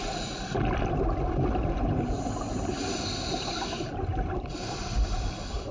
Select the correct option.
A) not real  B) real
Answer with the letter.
A